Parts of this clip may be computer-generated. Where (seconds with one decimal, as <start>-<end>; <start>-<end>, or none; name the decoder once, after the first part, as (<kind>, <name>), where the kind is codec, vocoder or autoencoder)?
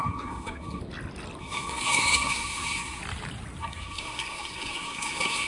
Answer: 0.0-0.8 (codec, SNAC); 1.4-3.0; 3.6-5.5